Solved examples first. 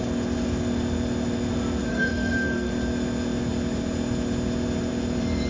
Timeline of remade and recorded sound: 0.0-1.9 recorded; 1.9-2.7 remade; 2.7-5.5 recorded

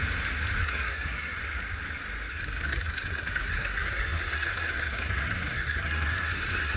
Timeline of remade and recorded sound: 0.0-0.6 recorded; 0.6-1.4 remade; 1.4-2.3 recorded; 2.3-6.8 remade